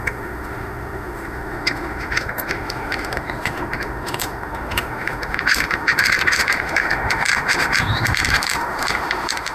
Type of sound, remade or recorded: remade